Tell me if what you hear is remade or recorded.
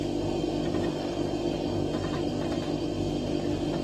recorded